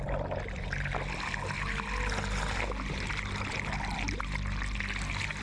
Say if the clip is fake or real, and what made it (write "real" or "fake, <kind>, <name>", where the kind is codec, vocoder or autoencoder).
real